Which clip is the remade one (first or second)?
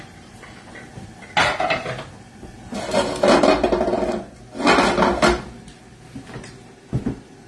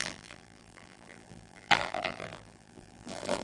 second